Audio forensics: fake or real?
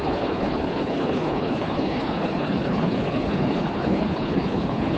fake